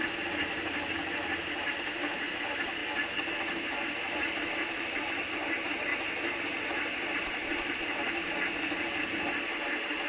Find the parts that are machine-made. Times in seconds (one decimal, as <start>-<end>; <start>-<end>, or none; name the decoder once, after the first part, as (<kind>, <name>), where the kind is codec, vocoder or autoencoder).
0.0-2.8 (vocoder, BigVGAN v2); 3.3-5.9; 6.4-10.1